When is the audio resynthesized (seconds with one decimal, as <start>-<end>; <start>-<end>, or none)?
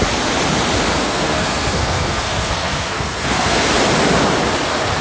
1.0-3.7